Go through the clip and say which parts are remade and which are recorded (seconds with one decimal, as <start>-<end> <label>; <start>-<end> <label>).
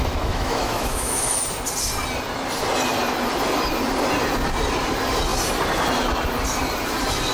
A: 0.0-1.4 remade; 1.4-7.3 recorded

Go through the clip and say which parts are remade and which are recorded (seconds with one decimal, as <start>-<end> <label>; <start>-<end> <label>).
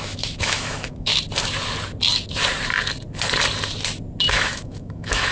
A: 0.0-1.1 remade; 1.1-4.3 recorded; 4.3-5.3 remade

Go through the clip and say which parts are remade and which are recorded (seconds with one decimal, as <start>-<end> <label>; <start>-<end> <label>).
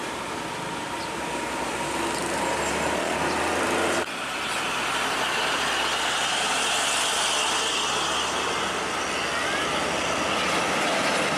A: 0.0-11.4 recorded